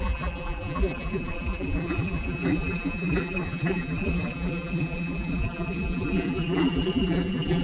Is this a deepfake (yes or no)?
yes